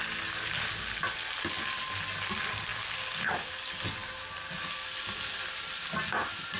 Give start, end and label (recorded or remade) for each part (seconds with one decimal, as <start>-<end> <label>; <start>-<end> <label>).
0.0-6.6 recorded